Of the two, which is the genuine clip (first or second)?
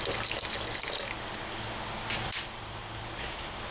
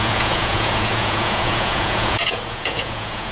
first